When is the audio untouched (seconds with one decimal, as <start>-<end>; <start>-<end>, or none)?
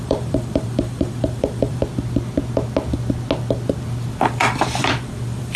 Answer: 1.8-4.2